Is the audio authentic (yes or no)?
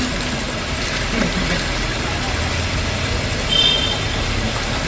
yes